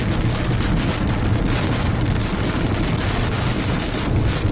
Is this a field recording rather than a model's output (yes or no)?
yes